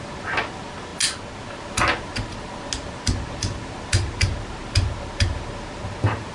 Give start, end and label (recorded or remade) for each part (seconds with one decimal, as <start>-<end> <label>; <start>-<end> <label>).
0.0-6.3 recorded